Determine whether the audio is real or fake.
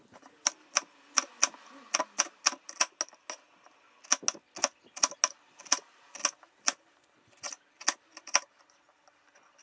real